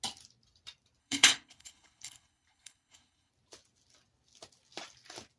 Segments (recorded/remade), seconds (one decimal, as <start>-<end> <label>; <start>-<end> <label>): 0.0-1.0 recorded; 1.0-3.3 remade; 3.3-5.4 recorded